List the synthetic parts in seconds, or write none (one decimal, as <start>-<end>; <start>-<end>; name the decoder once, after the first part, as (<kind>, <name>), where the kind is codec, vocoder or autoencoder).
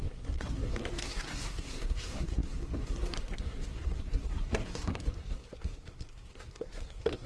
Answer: 0.0-7.3 (codec, SNAC)